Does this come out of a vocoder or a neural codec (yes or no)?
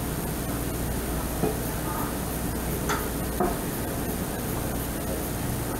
no